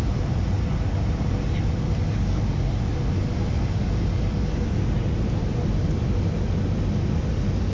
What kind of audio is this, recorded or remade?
recorded